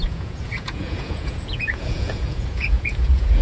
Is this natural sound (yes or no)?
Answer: no